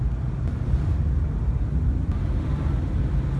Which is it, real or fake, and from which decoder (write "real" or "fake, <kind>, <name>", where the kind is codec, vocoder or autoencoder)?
real